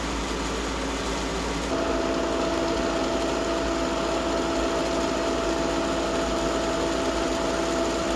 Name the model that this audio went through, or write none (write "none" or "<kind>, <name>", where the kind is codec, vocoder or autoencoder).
none